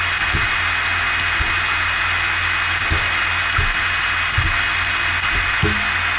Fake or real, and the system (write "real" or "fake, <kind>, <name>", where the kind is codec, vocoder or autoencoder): real